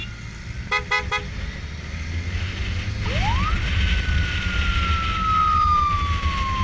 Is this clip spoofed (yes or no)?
no